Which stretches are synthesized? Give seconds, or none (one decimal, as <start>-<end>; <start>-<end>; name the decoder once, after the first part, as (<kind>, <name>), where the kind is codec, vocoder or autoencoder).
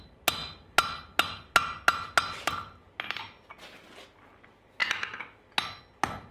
none